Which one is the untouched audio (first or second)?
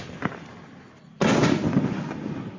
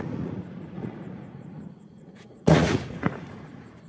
first